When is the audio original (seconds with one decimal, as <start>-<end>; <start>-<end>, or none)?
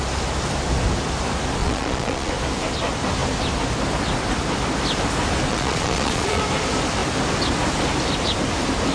0.0-1.6; 2.3-5.5; 6.4-8.9